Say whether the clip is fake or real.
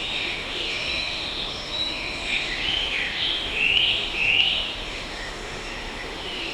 fake